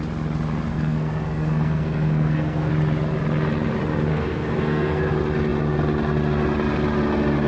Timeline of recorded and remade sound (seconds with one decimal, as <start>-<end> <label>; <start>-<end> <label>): 0.0-0.7 recorded; 0.7-2.7 remade; 2.7-4.1 recorded; 4.1-5.1 remade; 5.1-7.5 recorded